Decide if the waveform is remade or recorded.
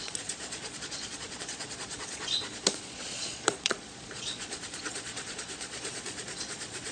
remade